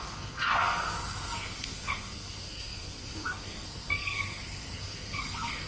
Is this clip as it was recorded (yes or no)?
no